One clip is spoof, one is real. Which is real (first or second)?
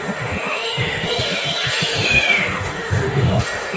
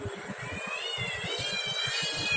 second